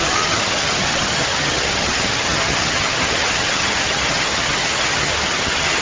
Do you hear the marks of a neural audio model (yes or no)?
yes